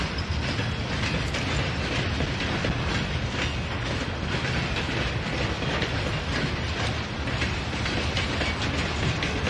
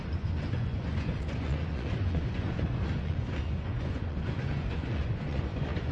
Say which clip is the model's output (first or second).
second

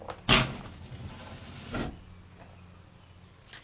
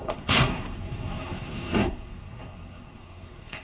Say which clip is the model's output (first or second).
second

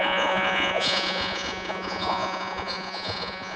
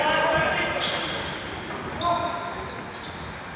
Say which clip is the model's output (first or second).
first